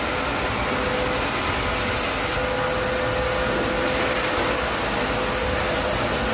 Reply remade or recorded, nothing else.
recorded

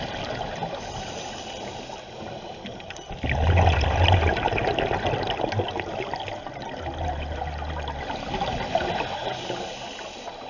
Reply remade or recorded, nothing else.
recorded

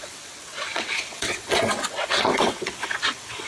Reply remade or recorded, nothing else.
remade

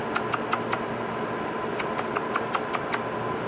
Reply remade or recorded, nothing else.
recorded